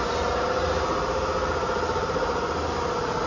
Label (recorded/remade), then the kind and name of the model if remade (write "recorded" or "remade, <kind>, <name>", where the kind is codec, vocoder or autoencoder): recorded